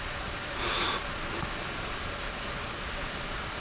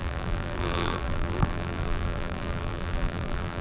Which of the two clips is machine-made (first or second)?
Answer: second